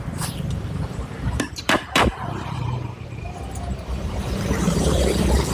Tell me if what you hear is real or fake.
fake